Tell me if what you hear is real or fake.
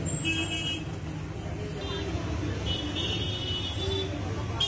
real